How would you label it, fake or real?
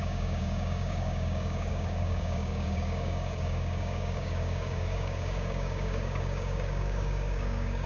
fake